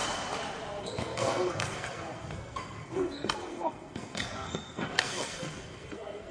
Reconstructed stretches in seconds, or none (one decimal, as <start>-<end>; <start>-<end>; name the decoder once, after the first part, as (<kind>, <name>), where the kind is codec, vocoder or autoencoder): 0.8-6.3 (codec, SNAC)